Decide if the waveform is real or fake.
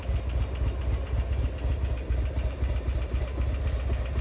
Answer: real